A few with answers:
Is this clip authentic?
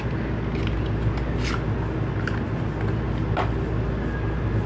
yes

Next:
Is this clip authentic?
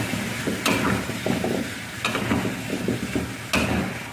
yes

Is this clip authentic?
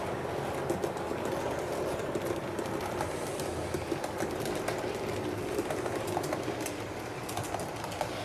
yes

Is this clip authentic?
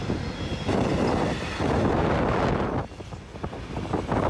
yes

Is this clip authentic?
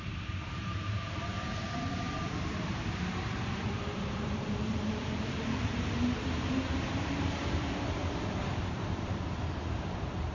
no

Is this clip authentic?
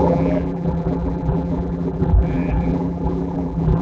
no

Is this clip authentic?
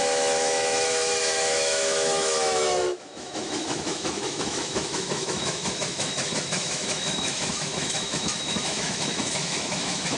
no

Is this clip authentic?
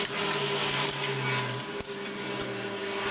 yes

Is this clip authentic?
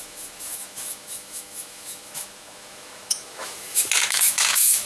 no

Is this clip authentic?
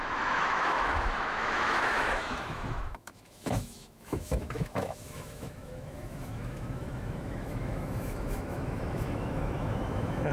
no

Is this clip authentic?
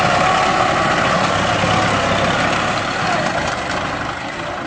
yes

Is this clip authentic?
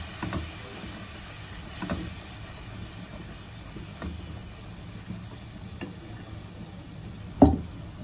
yes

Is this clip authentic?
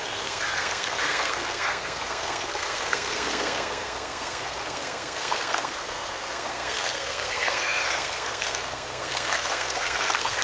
no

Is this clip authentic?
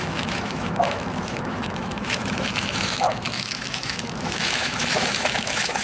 no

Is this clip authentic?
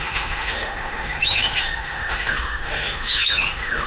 no